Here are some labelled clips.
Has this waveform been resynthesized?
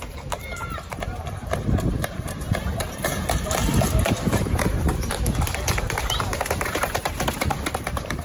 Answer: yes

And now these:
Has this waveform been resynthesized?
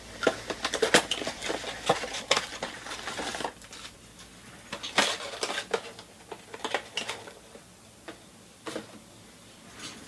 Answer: no